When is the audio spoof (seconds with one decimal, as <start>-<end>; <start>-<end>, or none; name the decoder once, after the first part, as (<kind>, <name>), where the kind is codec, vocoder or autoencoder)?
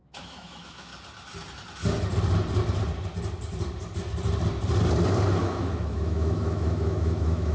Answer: 0.0-0.9 (autoencoder, DAC-VAE); 5.4-7.5